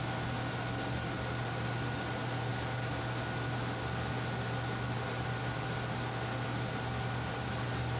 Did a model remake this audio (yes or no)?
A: no